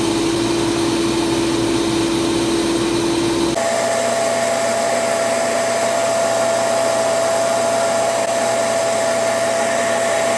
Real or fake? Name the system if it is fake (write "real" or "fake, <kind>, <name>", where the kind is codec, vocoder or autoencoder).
real